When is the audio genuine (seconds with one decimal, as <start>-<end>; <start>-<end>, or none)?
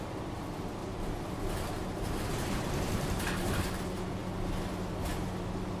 0.0-0.8; 3.8-5.8